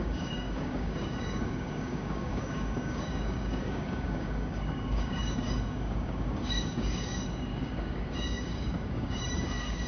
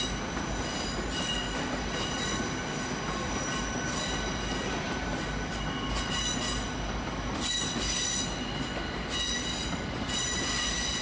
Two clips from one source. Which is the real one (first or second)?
second